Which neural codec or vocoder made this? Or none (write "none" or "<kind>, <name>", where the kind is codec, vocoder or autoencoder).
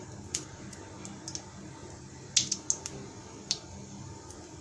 none